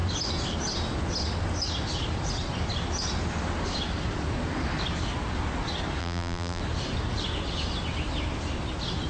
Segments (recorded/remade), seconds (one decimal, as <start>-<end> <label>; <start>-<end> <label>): 0.0-6.0 recorded; 6.0-6.6 remade; 6.6-9.1 recorded